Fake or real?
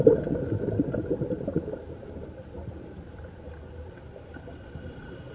real